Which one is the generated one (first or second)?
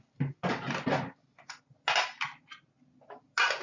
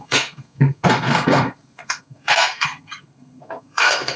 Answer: second